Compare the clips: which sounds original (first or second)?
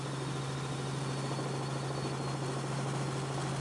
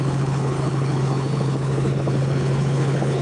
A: first